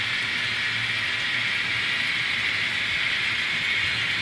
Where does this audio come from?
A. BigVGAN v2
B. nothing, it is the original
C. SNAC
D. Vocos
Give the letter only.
B